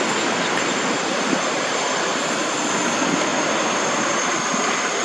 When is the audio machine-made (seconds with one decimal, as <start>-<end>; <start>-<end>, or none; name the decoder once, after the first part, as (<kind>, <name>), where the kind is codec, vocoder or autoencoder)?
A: none